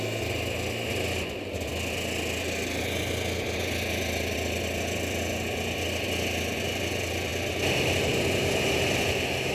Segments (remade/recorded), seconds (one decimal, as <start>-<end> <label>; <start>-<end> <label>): 0.0-9.5 recorded